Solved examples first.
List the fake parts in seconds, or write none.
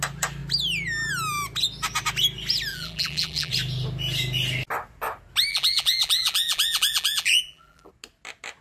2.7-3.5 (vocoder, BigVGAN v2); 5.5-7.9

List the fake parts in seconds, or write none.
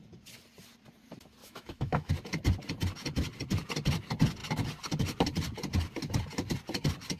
1.4-2.1 (autoencoder, DAC-VAE)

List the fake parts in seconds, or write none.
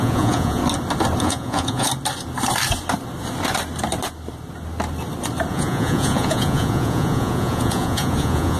0.0-0.6 (vocoder, Vocos); 1.2-1.9; 5.5-8.6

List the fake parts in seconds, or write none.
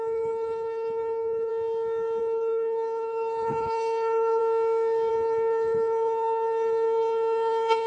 0.0-1.5 (codec, HILCodec); 2.2-4.4; 5.1-7.9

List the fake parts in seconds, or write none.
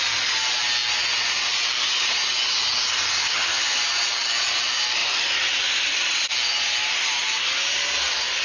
3.2-3.8 (vocoder, HiFi-GAN)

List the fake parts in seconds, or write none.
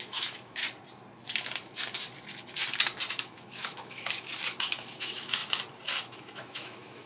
0.0-0.6 (autoencoder, DAC-VAE); 3.1-4.3; 4.8-5.4; 6.0-7.1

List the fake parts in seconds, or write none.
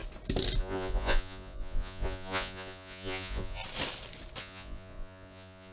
0.6-3.6 (vocoder, Vocos); 4.4-5.7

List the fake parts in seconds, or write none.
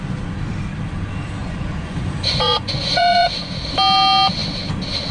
1.4-3.5 (vocoder, Vocos)